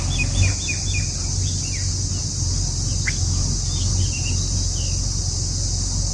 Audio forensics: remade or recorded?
recorded